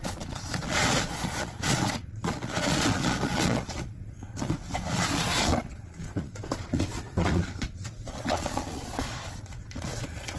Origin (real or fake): fake